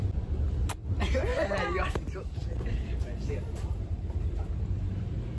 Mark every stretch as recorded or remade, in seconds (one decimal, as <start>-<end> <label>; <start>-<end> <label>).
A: 0.0-1.3 recorded; 1.3-4.5 remade; 4.5-5.4 recorded